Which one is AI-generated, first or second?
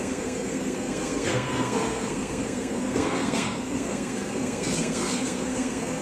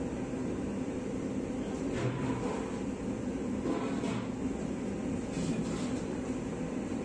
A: first